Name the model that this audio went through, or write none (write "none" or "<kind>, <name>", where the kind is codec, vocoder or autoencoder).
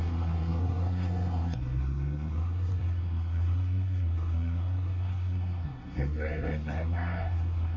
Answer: codec, SNAC